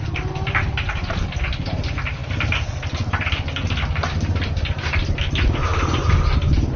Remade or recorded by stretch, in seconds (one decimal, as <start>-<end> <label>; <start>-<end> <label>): 0.0-6.8 recorded